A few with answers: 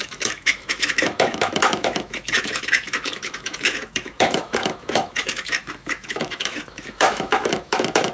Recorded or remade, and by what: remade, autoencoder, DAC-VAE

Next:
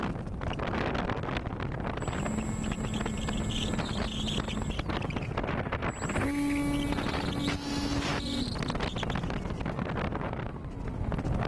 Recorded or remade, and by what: recorded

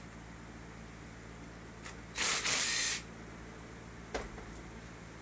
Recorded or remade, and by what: recorded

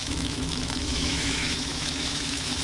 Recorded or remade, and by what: remade, autoencoder, DAC-VAE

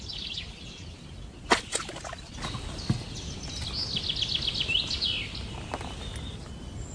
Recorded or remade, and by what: recorded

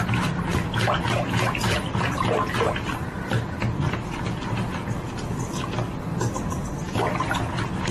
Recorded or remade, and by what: recorded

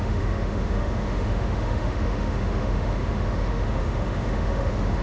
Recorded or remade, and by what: remade, autoencoder, DAC-VAE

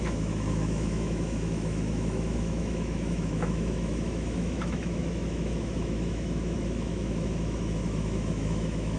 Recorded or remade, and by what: remade, autoencoder, DAC-VAE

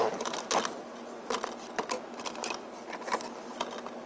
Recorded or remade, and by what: recorded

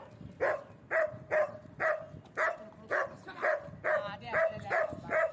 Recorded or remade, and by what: recorded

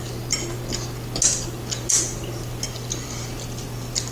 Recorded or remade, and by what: recorded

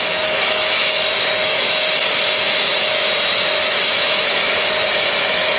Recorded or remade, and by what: remade, autoencoder, DAC-VAE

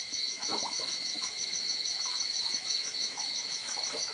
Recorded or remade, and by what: remade, autoencoder, DAC-VAE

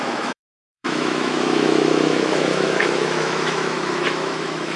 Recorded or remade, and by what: remade, autoencoder, DAC-VAE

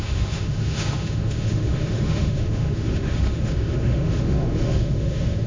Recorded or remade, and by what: remade, autoencoder, DAC-VAE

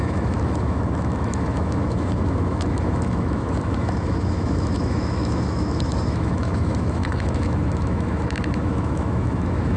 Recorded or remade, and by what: remade, autoencoder, DAC-VAE